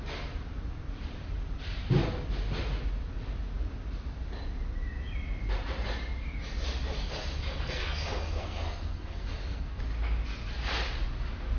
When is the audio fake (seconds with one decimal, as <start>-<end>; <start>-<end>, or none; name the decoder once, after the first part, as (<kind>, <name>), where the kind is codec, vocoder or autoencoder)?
7.5-9.8 (codec, SNAC)